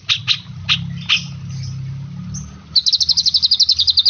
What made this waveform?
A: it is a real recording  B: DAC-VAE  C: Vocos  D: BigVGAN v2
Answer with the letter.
A